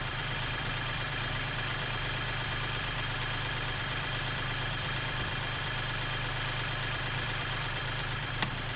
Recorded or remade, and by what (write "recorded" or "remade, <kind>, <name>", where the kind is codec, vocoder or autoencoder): remade, vocoder, BigVGAN v2